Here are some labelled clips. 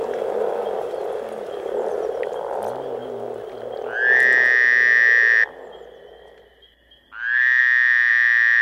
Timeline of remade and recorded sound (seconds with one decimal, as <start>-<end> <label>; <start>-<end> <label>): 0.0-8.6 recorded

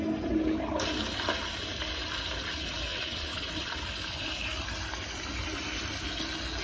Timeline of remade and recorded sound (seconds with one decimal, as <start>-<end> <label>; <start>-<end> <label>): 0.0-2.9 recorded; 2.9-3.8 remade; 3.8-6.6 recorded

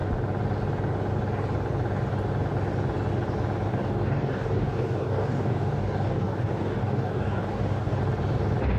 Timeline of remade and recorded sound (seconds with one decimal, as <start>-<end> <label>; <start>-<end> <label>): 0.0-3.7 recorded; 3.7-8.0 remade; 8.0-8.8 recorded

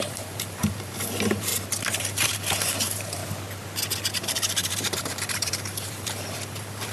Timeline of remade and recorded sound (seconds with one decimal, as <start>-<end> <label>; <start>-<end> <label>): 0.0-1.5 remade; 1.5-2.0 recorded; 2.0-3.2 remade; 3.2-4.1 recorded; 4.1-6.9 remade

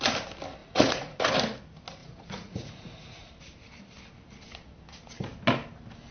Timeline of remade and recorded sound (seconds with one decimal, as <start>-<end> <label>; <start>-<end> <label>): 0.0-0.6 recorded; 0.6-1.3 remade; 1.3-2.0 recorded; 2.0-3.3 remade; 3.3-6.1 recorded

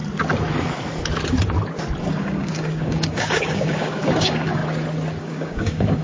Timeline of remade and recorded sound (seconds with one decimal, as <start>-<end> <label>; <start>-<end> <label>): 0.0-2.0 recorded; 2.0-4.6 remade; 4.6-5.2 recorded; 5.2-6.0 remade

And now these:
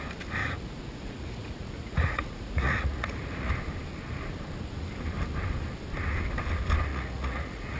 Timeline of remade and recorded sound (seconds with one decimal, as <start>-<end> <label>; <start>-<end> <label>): 0.0-0.4 recorded; 0.4-3.5 remade; 3.5-6.9 recorded; 6.9-7.8 remade